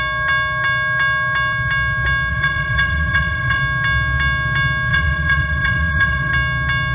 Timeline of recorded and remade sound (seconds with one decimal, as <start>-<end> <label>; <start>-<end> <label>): 0.0-2.3 recorded; 2.3-3.6 remade; 3.6-4.9 recorded; 4.9-6.3 remade; 6.3-6.9 recorded